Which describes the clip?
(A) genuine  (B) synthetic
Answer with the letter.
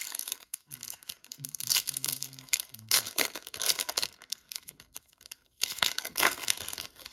B